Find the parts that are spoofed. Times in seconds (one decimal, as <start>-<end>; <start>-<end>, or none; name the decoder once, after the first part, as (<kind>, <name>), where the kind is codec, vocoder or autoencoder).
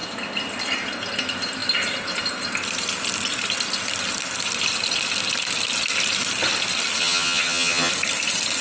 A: 7.0-7.9 (vocoder, HiFi-GAN)